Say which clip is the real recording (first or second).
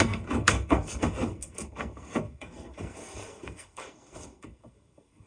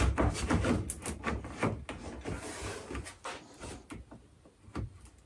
second